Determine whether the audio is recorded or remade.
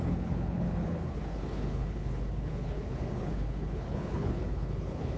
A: remade